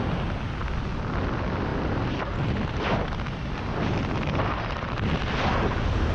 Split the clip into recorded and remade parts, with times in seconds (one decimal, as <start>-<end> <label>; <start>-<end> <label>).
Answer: 0.0-6.1 recorded